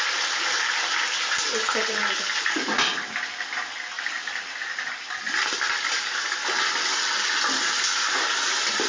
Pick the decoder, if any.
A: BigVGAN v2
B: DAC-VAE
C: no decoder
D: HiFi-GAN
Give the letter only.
C